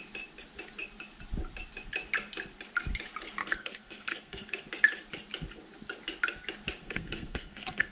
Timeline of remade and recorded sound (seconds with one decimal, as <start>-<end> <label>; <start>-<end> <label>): 0.0-3.4 recorded; 3.4-4.7 remade; 4.7-6.8 recorded; 6.8-7.9 remade